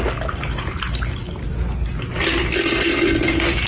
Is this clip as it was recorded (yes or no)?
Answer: yes